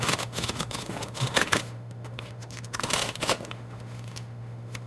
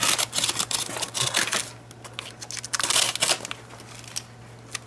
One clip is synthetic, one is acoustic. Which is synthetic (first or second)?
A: first